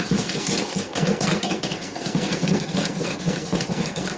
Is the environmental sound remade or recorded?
remade